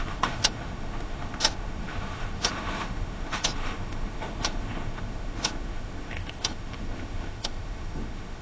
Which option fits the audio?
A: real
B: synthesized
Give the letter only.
B